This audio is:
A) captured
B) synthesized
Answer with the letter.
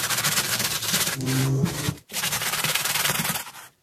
B